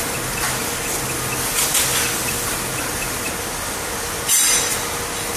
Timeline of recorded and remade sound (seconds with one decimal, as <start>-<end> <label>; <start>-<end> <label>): 0.0-5.4 recorded